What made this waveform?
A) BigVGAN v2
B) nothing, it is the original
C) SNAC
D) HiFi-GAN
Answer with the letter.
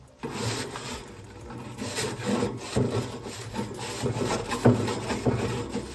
B